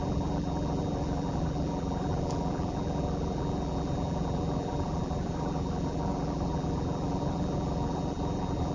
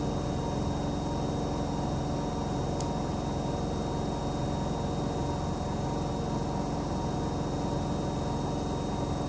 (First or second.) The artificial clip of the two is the first